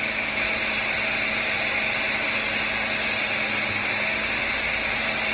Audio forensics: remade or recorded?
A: recorded